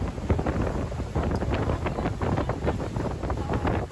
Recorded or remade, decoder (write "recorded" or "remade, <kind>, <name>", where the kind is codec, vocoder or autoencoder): recorded